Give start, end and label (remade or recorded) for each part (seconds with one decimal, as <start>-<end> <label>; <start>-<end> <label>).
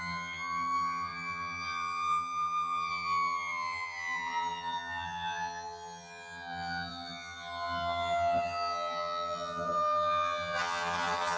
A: 0.0-11.4 remade